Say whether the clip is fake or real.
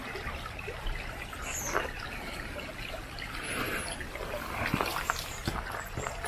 real